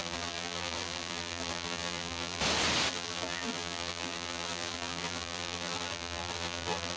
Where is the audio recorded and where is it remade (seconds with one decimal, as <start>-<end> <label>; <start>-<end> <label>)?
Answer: 0.0-2.4 remade; 2.4-2.9 recorded; 2.9-7.0 remade